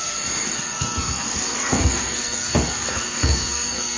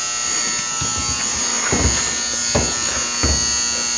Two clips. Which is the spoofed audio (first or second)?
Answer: first